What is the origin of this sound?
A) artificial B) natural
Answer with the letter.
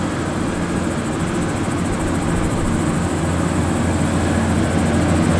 B